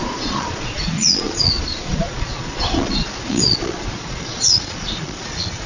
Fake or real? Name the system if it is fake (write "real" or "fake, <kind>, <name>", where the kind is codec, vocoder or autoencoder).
fake, vocoder, Vocos